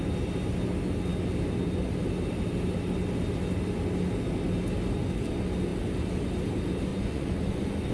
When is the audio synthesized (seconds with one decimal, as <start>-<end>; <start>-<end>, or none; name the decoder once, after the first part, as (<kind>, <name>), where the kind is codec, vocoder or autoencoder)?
6.9-7.9 (vocoder, Vocos)